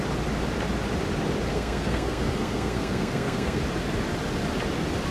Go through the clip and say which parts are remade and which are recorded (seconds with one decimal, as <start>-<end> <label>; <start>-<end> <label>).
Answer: 0.0-1.5 recorded; 1.5-3.6 remade; 3.6-5.1 recorded